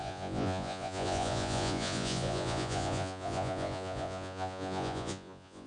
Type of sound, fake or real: fake